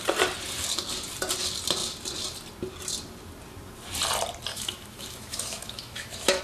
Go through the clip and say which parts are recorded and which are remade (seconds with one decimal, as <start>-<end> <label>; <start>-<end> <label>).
0.0-4.5 recorded; 4.5-6.4 remade